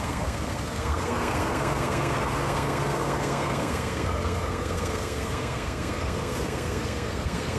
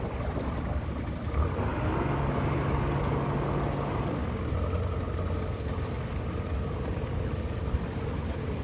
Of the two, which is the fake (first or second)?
first